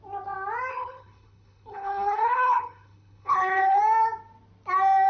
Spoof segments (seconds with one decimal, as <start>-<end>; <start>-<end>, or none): 0.7-3.8

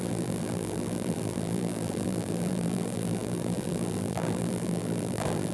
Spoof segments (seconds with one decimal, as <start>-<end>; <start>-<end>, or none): 0.0-5.5

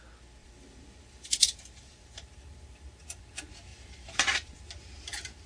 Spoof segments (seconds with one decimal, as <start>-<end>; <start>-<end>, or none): 0.4-3.2; 3.7-4.5

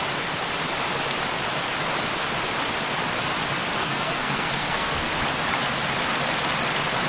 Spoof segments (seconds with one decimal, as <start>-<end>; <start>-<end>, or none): 3.8-5.1